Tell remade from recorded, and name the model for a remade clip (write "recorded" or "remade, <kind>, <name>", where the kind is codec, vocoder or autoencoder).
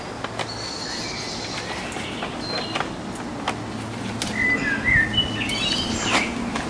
recorded